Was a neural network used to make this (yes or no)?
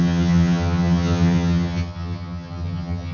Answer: yes